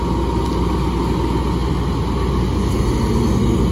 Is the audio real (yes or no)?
yes